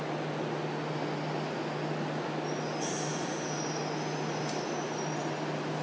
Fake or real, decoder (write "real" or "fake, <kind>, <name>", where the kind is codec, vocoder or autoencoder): real